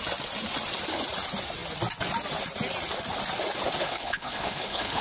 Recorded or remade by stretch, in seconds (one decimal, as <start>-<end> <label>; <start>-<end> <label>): 0.0-3.8 recorded; 3.8-5.0 remade